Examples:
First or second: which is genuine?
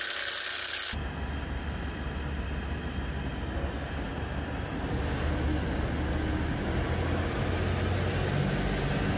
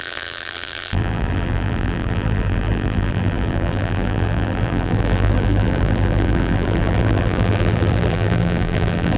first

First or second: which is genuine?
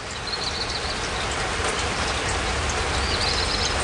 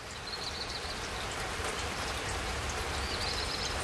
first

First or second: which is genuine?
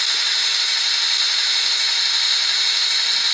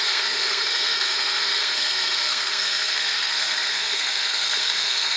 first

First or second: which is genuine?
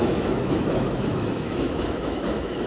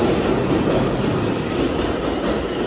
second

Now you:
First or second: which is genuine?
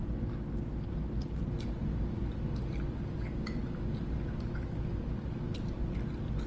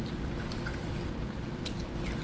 first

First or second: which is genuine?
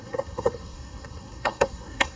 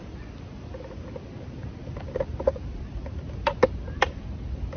second